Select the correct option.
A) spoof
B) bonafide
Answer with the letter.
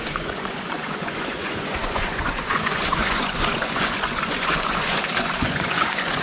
A